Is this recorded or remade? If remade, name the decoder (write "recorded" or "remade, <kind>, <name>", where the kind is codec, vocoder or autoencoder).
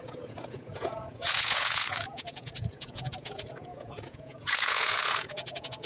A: remade, vocoder, Vocos